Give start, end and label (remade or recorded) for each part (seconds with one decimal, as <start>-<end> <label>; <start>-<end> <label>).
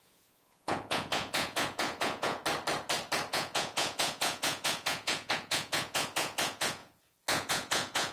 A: 0.0-2.4 remade; 2.4-3.3 recorded; 3.3-8.1 remade